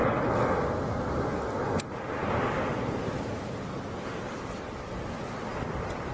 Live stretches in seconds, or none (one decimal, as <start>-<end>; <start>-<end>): 0.0-6.1